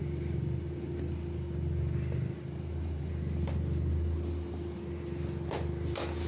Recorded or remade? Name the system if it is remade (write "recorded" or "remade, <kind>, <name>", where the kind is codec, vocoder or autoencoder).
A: recorded